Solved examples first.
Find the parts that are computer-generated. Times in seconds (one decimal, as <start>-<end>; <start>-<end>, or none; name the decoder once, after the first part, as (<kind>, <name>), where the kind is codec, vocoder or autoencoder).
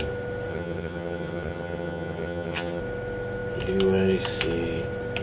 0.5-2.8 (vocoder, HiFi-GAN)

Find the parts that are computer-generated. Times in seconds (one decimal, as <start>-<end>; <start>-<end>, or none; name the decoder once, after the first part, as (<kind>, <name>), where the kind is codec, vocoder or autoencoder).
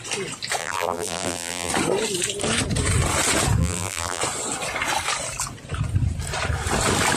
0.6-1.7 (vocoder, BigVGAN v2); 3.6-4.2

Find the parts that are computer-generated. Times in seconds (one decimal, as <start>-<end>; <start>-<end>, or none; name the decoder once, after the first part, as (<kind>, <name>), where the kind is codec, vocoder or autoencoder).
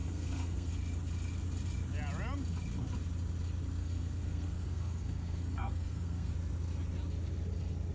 0.0-0.7 (codec, SNAC); 3.8-6.3